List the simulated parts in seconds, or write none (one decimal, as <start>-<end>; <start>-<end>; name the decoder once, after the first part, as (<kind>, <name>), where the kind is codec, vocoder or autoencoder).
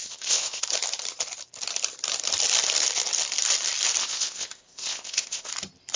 0.0-0.6 (codec, ZipCodec); 4.0-5.5